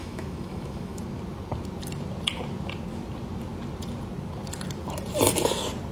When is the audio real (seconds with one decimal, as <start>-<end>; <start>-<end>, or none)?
1.0-5.9